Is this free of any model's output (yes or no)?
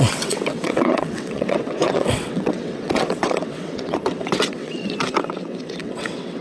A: no